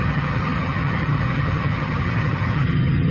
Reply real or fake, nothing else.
fake